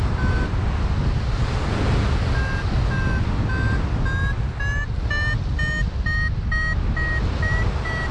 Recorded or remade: recorded